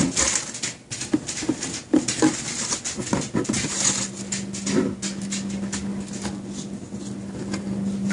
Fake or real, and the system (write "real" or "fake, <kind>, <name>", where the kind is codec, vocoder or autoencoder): real